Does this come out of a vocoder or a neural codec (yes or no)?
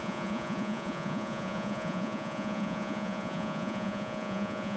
yes